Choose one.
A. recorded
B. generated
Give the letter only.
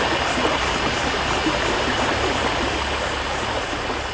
A